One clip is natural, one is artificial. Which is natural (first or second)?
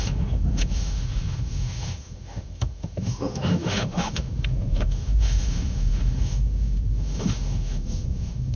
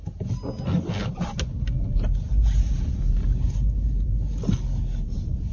second